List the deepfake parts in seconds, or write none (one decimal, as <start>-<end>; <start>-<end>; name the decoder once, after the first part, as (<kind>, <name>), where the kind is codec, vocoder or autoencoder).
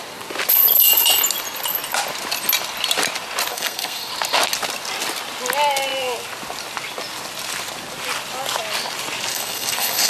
3.5-4.1 (codec, SNAC); 9.3-10.1